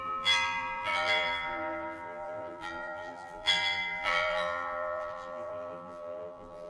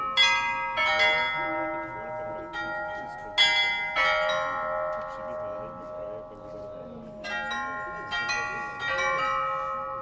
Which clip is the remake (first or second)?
first